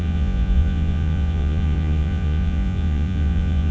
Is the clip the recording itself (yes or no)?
no